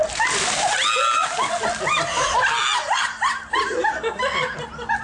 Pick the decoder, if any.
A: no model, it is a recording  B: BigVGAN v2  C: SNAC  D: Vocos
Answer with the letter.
A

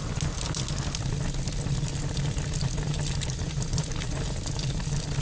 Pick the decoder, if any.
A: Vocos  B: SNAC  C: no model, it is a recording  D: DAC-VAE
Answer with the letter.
C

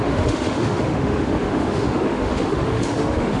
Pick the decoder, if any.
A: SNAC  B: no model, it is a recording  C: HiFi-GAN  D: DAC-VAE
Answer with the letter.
D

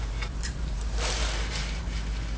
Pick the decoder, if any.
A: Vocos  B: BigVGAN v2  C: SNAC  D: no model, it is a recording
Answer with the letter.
B